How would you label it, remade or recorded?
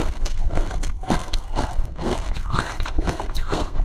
remade